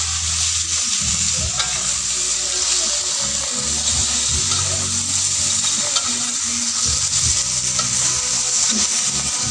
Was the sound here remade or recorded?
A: recorded